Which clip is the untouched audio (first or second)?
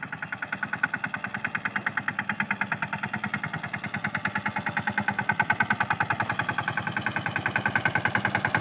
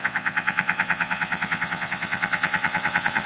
first